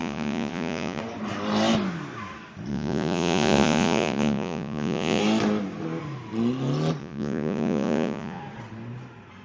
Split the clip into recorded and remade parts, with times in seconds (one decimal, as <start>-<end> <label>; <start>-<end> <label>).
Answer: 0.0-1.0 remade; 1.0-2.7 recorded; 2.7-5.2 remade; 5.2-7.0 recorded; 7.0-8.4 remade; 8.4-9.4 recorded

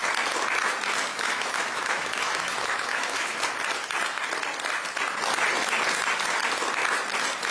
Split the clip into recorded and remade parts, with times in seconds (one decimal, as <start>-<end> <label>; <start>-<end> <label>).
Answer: 0.0-1.1 recorded; 1.1-3.4 remade; 3.4-7.5 recorded

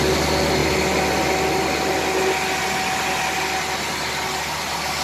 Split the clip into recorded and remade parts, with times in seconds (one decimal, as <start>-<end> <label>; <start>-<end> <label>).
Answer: 0.0-5.0 recorded

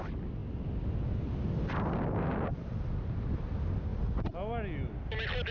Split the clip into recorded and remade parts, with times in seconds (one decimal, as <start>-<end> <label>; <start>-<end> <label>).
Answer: 0.0-5.5 recorded

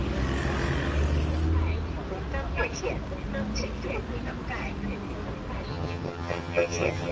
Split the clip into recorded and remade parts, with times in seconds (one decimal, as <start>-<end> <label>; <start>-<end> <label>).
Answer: 0.0-5.7 recorded; 5.7-7.1 remade

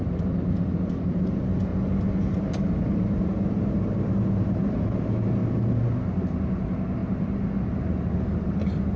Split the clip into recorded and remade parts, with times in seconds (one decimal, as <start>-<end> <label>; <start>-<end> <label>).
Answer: 0.0-1.7 remade; 1.7-2.4 recorded; 2.4-5.4 remade; 5.4-6.2 recorded; 6.2-7.0 remade; 7.0-8.0 recorded; 8.0-9.0 remade